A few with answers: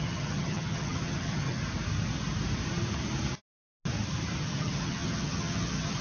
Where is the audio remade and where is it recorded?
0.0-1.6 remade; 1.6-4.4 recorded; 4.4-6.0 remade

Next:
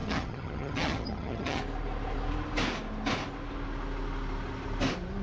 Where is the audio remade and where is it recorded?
0.0-1.6 remade; 1.6-5.2 recorded

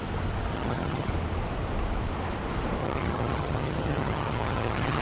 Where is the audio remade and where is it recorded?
0.0-0.5 recorded; 0.5-1.1 remade; 1.1-2.8 recorded; 2.8-5.0 remade

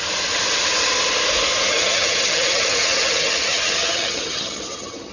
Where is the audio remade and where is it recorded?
0.0-1.7 recorded; 1.7-5.1 remade

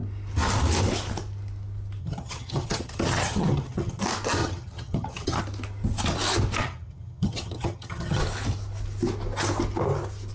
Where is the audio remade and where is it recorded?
0.0-2.0 recorded; 2.0-4.0 remade; 4.0-4.4 recorded; 4.4-5.4 remade; 5.4-6.6 recorded; 6.6-8.2 remade; 8.2-10.3 recorded

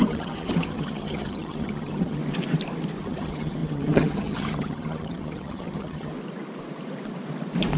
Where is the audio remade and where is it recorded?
0.0-2.2 remade; 2.2-3.0 recorded; 3.0-6.1 remade; 6.1-7.8 recorded

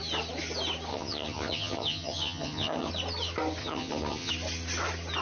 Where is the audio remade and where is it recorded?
0.0-0.9 recorded; 0.9-2.9 remade; 2.9-3.6 recorded; 3.6-4.3 remade; 4.3-5.2 recorded